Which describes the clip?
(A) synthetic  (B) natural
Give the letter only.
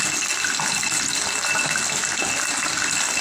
B